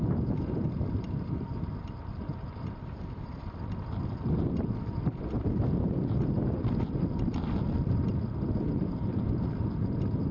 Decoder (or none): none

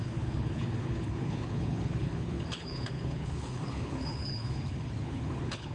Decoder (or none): codec, HILCodec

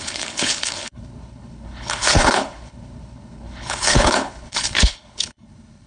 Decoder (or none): codec, HILCodec